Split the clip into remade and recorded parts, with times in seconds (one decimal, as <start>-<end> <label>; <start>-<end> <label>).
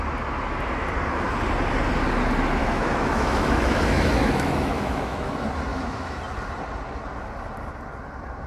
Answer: 0.0-2.6 recorded; 2.6-5.3 remade; 5.3-5.7 recorded; 5.7-6.2 remade; 6.2-8.5 recorded